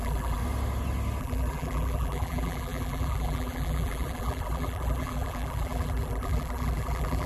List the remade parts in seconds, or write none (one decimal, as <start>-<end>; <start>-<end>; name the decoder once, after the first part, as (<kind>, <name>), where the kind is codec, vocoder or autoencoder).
0.0-0.4 (vocoder, BigVGAN v2); 1.2-7.3